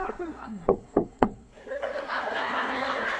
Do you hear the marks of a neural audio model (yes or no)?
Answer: yes